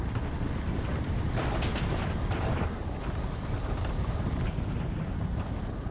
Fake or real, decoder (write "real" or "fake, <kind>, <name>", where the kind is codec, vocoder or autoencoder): real